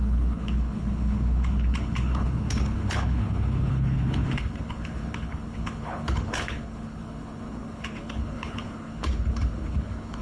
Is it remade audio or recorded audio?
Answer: remade